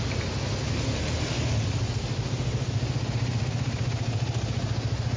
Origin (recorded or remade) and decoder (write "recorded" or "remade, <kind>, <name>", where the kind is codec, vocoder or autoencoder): recorded